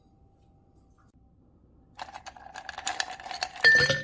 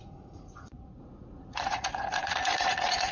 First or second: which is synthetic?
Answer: second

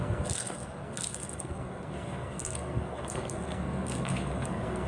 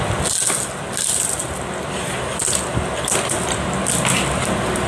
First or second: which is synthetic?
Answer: first